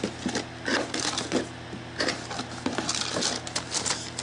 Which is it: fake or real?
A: real